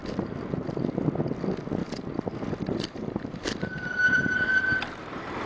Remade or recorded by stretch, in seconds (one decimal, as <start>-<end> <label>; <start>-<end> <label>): 0.0-1.8 recorded; 1.8-4.6 remade; 4.6-5.0 recorded; 5.0-5.5 remade

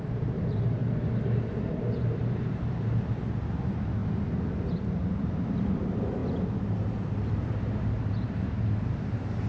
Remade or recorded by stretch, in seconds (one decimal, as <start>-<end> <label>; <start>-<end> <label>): 0.0-0.8 remade; 0.8-1.9 recorded; 1.9-4.0 remade; 4.0-4.5 recorded; 4.5-6.2 remade; 6.2-6.9 recorded; 6.9-9.5 remade

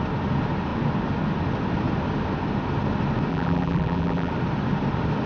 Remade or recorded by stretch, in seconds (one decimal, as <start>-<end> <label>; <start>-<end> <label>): 0.0-3.3 recorded; 3.3-4.3 remade; 4.3-5.3 recorded

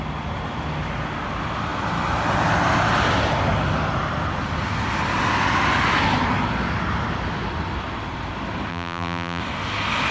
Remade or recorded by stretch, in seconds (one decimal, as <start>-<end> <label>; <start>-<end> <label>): 0.0-8.7 recorded; 8.7-9.4 remade; 9.4-10.1 recorded